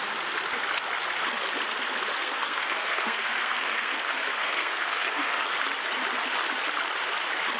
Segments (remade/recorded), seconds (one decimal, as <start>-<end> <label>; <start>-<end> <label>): 0.0-2.2 recorded; 2.2-5.5 remade; 5.5-7.6 recorded